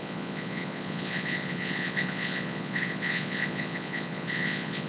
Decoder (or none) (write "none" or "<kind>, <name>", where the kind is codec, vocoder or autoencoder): vocoder, Vocos